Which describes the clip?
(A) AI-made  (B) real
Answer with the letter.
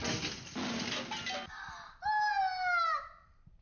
B